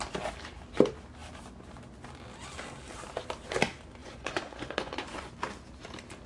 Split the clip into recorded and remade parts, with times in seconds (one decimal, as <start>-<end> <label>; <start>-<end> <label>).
0.0-4.0 recorded; 4.0-5.3 remade; 5.3-6.3 recorded